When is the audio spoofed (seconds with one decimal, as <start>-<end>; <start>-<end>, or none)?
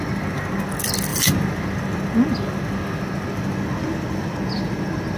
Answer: none